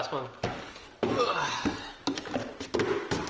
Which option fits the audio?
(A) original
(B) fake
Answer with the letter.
A